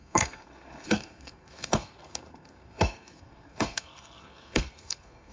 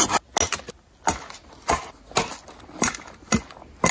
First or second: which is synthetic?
first